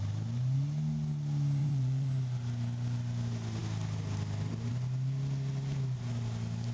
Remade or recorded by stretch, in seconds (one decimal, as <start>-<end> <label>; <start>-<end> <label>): 0.0-1.6 recorded; 1.6-2.1 remade; 2.1-6.7 recorded